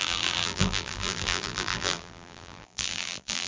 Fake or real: fake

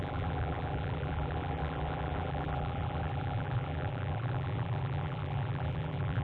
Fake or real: fake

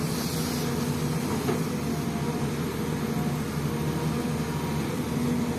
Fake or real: real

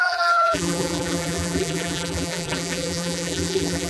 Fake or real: fake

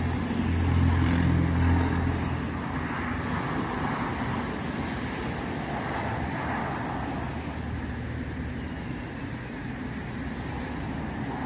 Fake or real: real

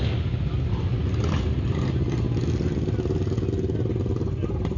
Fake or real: real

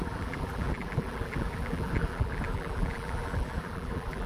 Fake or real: fake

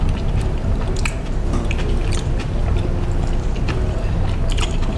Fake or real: fake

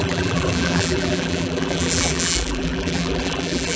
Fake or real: fake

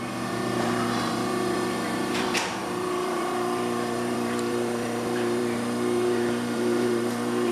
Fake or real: fake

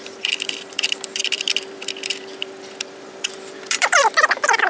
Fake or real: fake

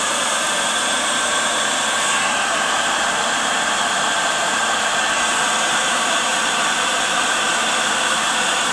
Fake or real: fake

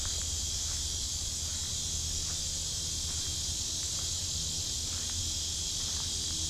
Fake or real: real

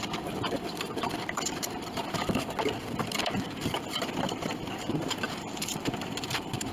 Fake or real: fake